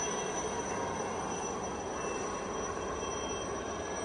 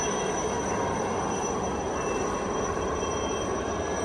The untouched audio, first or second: first